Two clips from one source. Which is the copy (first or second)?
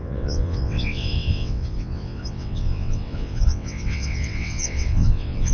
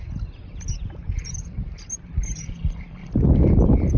first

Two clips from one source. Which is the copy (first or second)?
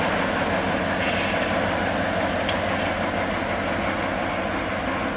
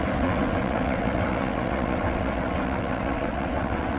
second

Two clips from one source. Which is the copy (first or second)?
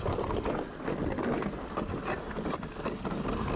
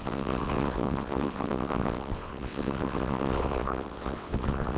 second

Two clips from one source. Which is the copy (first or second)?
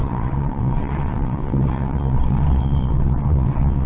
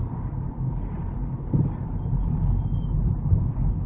first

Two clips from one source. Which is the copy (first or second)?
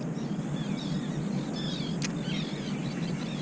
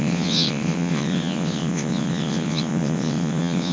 second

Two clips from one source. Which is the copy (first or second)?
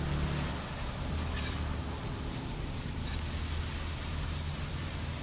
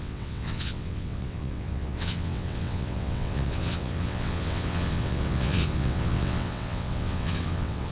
second